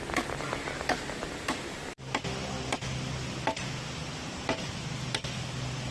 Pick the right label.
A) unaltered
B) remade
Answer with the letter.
A